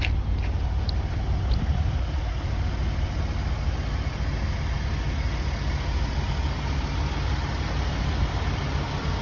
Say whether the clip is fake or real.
real